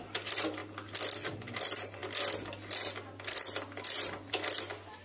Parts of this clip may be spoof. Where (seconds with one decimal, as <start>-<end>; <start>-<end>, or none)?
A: none